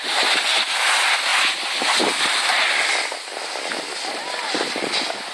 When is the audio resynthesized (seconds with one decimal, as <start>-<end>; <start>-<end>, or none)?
none